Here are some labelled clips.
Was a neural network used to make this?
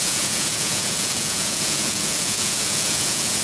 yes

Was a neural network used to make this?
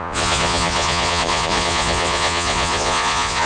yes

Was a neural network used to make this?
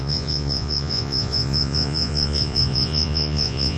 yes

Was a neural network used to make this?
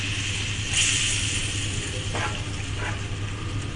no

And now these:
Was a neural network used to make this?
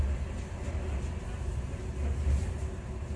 no